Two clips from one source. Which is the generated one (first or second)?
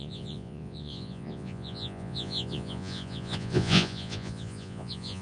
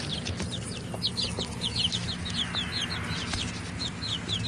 first